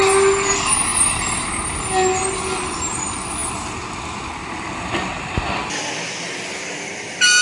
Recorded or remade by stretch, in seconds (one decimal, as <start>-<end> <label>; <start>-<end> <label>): 0.0-7.4 recorded